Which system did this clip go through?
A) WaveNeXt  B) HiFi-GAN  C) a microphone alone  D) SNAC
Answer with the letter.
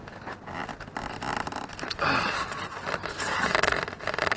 C